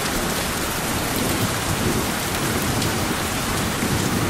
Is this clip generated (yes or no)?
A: yes